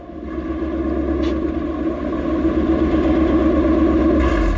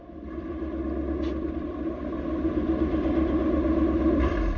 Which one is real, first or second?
first